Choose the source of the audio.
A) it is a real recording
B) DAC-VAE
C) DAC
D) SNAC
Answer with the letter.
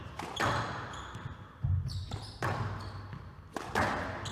A